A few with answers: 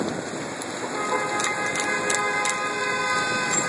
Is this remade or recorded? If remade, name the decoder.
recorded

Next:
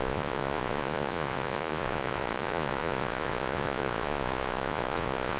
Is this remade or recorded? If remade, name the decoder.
remade, vocoder, Vocos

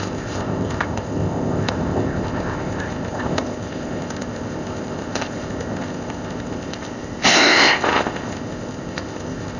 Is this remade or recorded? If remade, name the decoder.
remade, codec, ZipCodec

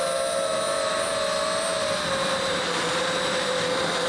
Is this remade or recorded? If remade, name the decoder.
recorded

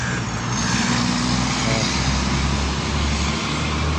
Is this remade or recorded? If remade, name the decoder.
recorded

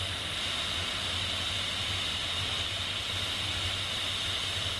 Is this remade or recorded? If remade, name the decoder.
recorded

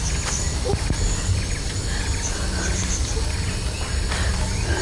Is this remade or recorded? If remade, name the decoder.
recorded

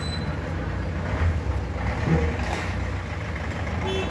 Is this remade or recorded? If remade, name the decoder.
recorded